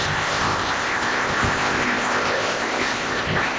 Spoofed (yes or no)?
yes